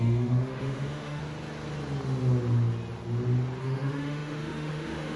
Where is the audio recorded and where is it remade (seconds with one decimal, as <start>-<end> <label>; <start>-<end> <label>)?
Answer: 0.0-1.2 remade; 1.2-3.6 recorded; 3.6-5.2 remade